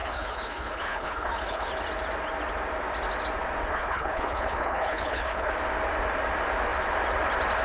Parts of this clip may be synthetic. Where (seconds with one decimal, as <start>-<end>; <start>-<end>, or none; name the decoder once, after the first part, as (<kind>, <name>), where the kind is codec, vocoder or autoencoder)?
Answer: 0.0-1.7 (codec, HILCodec); 3.7-5.5